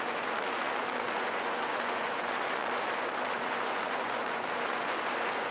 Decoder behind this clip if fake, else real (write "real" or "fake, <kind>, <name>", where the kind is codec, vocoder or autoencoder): fake, vocoder, Vocos